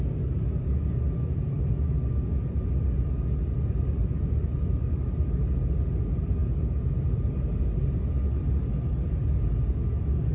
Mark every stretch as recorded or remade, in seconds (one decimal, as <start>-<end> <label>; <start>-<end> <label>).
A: 0.0-6.4 recorded; 6.4-7.3 remade; 7.3-10.3 recorded